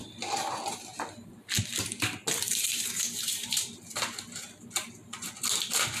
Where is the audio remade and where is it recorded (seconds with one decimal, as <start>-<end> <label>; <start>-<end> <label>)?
0.0-6.0 recorded